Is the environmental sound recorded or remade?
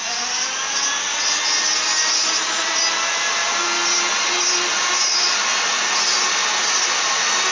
recorded